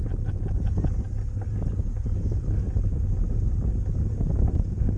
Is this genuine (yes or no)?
yes